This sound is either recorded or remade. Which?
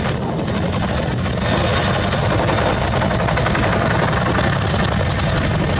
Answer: recorded